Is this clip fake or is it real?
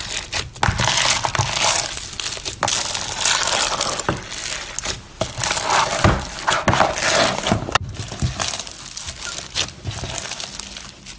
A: real